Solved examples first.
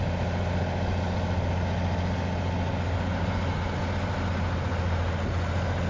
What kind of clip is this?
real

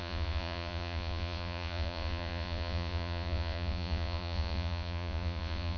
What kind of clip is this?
fake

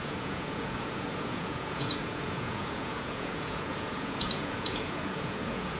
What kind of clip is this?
fake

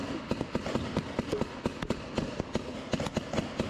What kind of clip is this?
real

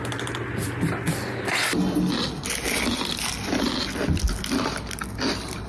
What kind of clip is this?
real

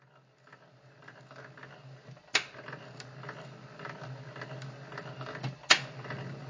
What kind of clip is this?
real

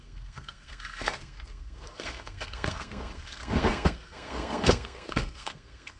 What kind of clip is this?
fake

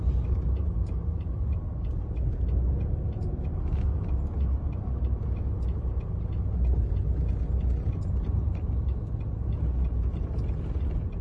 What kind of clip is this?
real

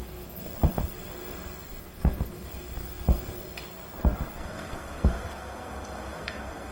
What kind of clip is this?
fake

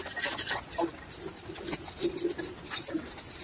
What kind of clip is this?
real